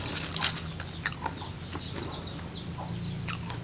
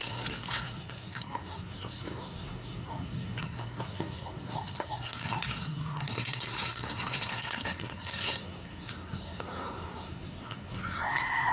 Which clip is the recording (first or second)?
first